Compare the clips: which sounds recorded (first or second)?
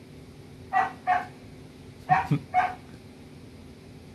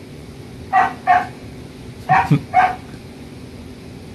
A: first